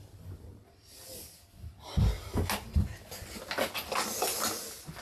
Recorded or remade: recorded